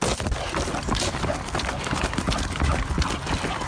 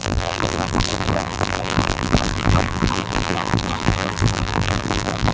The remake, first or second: second